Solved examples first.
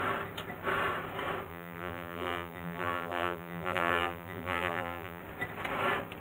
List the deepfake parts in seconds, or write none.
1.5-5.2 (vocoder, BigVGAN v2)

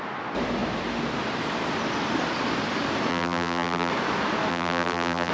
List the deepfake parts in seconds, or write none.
3.1-3.9 (vocoder, BigVGAN v2); 4.5-5.3

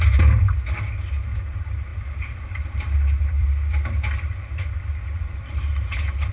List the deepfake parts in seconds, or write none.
1.9-5.7 (vocoder, BigVGAN v2)

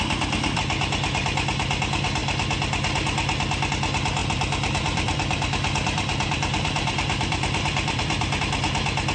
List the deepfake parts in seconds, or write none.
4.2-8.4 (vocoder, BigVGAN v2)

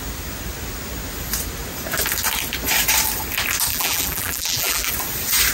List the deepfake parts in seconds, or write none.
3.7-4.9 (vocoder, BigVGAN v2)